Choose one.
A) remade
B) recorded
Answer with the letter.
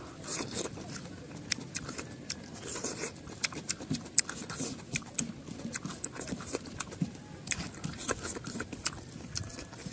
B